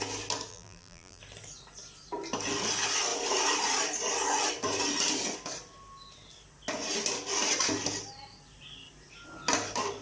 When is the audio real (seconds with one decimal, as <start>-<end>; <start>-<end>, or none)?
0.0-0.5; 1.2-10.0